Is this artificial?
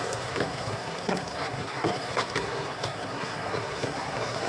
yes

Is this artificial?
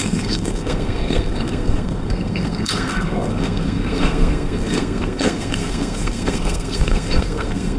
yes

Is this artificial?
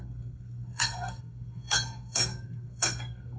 yes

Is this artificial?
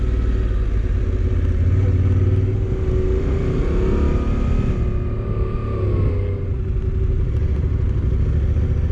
no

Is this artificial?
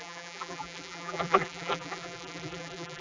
yes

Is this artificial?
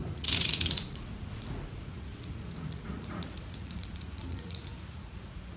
yes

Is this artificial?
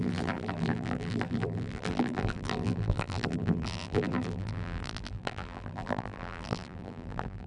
yes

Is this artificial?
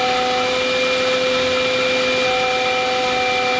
no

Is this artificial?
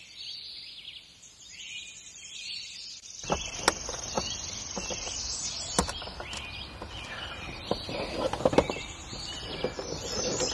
no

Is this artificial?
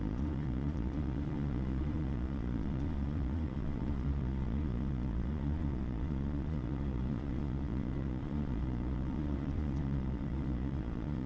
yes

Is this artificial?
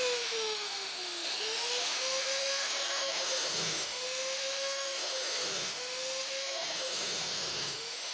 yes